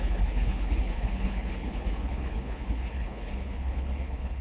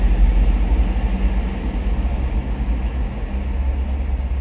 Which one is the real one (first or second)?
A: second